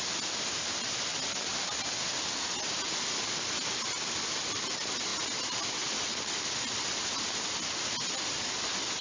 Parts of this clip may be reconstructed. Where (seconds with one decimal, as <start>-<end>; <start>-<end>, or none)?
none